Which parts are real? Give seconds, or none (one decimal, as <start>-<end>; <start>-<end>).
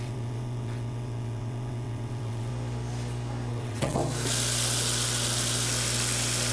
2.5-3.5; 4.0-6.5